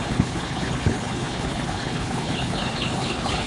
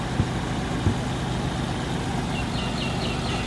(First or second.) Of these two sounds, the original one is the second